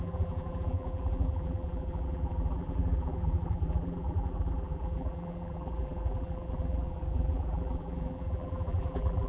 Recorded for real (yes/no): no